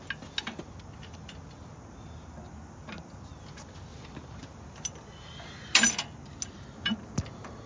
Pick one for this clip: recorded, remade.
recorded